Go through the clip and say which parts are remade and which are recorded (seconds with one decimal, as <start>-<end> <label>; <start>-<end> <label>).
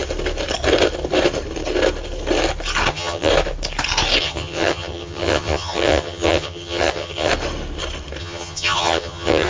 0.0-2.9 recorded; 2.9-3.3 remade; 3.3-4.2 recorded; 4.2-7.3 remade; 7.3-8.2 recorded; 8.2-9.5 remade